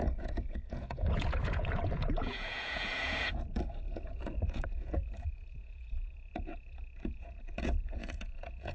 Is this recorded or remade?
remade